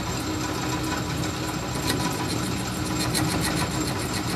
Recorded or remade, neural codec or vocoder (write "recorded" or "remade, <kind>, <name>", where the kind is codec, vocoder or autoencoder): recorded